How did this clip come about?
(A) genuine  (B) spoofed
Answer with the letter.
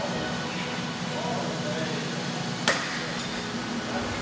A